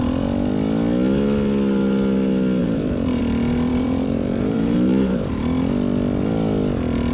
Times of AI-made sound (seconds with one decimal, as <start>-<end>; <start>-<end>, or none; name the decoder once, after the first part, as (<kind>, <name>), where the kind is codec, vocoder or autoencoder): 2.6-3.2 (vocoder, BigVGAN v2); 3.7-5.4